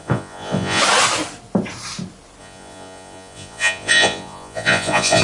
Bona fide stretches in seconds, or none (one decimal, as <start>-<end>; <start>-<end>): 0.8-2.4